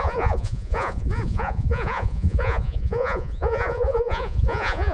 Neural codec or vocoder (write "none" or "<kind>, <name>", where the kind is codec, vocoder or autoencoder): vocoder, Vocos